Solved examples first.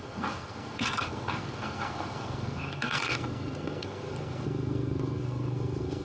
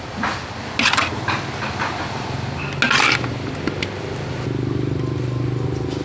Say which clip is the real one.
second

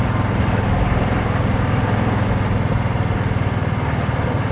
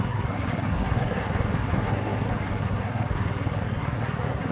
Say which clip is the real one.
first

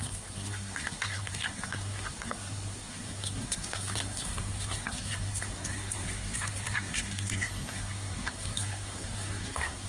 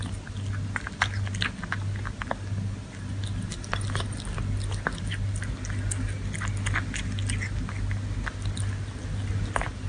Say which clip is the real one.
second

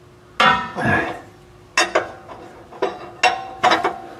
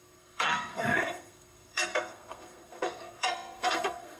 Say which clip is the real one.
first